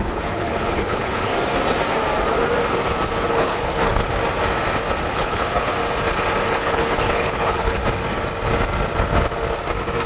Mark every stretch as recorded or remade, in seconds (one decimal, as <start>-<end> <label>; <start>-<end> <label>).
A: 0.0-1.3 remade; 1.3-3.3 recorded; 3.3-3.9 remade; 3.9-5.1 recorded; 5.1-5.8 remade; 5.8-6.5 recorded; 6.5-7.8 remade; 7.8-10.1 recorded